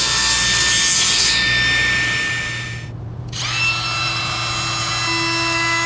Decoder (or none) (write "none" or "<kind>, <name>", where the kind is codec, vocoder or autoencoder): none